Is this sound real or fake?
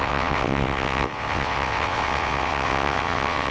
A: fake